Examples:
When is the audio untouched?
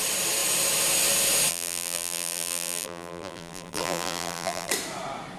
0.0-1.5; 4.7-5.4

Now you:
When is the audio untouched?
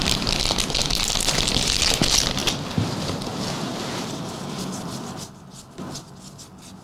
0.0-6.8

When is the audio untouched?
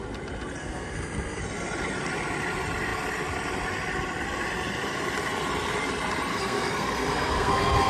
0.0-0.6; 1.4-6.3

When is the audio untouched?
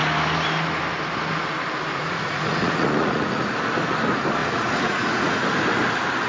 0.0-1.9; 3.5-4.4; 5.4-6.3